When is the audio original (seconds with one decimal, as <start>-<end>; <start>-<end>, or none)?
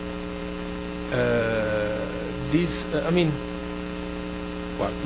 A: 0.0-5.1